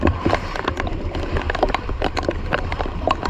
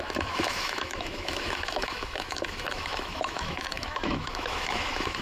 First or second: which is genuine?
first